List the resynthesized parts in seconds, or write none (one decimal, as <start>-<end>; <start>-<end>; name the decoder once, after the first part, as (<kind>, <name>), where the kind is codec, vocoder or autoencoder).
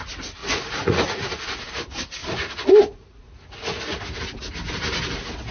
0.4-1.6 (vocoder, Vocos); 2.2-4.0